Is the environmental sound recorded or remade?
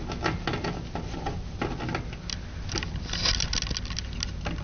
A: recorded